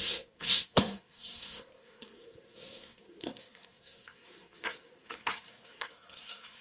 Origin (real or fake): fake